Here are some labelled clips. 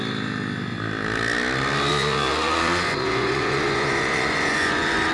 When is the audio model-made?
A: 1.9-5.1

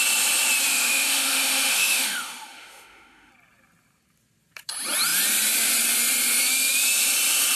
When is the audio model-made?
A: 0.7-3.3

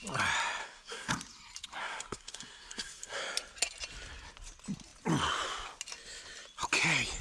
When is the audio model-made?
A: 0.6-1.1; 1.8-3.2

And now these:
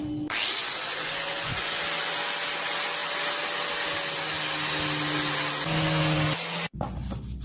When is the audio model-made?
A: 0.6-1.8

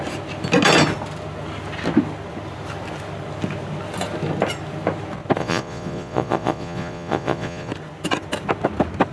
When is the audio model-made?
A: 5.4-7.7

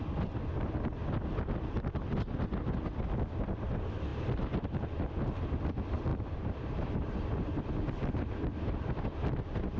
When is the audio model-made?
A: 6.1-7.1

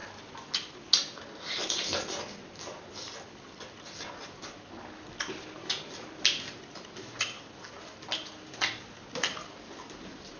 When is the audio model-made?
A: none

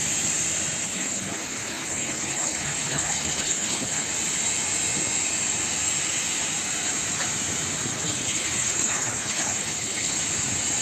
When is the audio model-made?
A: 0.8-4.1; 7.9-10.2